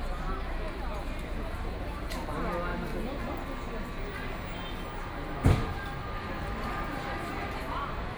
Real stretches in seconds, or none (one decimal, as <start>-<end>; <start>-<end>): 0.0-8.2